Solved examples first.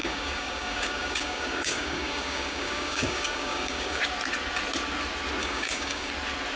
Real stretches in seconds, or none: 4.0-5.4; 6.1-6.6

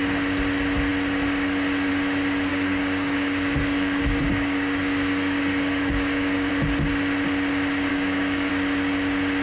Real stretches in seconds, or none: 0.0-2.5; 6.5-7.9; 8.5-9.4

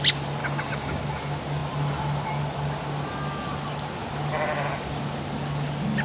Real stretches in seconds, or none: 0.0-0.4; 1.0-6.0

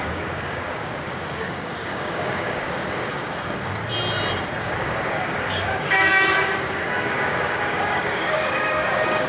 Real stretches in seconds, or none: 3.8-4.6

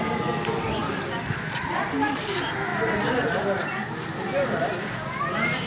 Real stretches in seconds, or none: 0.0-5.7